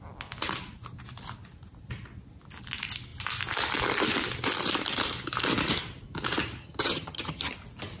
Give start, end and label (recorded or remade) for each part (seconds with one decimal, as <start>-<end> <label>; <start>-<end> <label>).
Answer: 0.0-6.6 recorded; 6.6-7.5 remade; 7.5-8.0 recorded